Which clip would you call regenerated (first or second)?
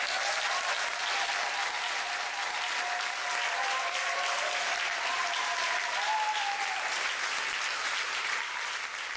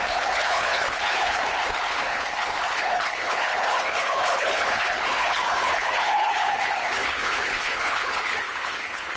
second